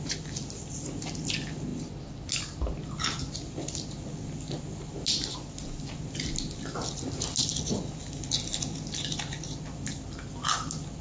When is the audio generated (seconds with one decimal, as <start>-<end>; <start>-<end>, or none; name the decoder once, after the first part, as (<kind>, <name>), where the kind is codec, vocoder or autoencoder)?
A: none